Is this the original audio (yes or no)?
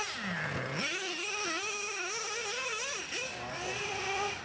yes